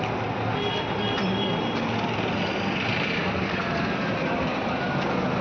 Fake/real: real